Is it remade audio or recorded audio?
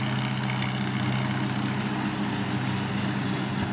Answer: recorded